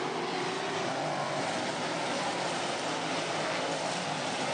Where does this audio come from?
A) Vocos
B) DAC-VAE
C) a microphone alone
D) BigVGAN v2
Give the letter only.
C